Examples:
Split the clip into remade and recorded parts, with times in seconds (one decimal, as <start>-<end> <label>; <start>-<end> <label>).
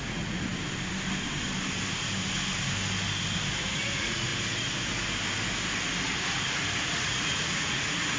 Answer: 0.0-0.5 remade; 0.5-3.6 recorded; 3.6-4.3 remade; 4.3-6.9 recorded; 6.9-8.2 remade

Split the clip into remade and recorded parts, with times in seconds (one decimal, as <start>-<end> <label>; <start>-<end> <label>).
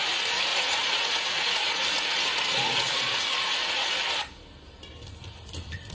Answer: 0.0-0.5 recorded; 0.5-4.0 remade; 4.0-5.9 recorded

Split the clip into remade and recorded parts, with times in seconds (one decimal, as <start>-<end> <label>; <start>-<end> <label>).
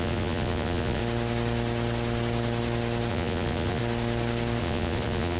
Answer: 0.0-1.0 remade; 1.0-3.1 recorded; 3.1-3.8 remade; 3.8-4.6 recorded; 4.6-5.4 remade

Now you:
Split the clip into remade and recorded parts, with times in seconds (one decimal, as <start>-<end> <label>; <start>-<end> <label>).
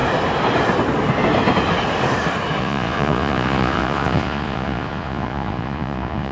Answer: 0.0-2.6 recorded; 2.6-6.3 remade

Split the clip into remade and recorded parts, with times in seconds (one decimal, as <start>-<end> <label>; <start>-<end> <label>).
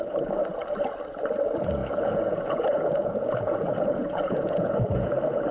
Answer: 0.0-1.8 recorded; 1.8-5.1 remade; 5.1-5.5 recorded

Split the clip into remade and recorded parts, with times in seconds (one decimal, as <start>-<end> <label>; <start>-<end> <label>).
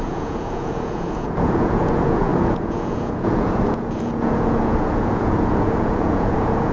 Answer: 0.0-6.7 remade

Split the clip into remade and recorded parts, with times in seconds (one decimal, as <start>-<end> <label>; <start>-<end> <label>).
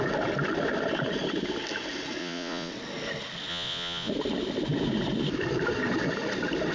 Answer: 0.0-2.2 recorded; 2.2-2.7 remade; 2.7-3.5 recorded; 3.5-4.1 remade; 4.1-6.7 recorded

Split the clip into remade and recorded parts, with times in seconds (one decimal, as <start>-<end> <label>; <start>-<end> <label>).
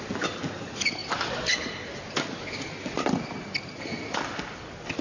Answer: 0.0-5.0 recorded